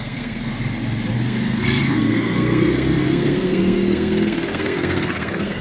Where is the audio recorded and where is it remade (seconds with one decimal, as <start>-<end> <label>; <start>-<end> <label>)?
0.0-0.5 remade; 0.5-1.1 recorded; 1.1-5.6 remade